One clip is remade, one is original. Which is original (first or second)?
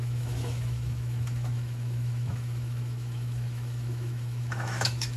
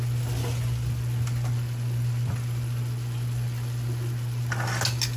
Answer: second